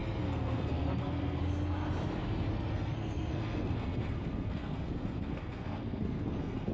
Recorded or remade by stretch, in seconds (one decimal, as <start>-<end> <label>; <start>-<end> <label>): 0.0-1.4 remade; 1.4-2.5 recorded; 2.5-6.7 remade